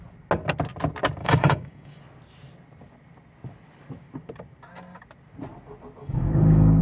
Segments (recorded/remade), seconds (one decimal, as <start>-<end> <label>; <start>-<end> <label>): 0.0-1.2 recorded; 1.2-2.0 remade; 2.0-6.0 recorded; 6.0-6.8 remade